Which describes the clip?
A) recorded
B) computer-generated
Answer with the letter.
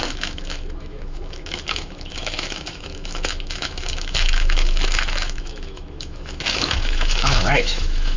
B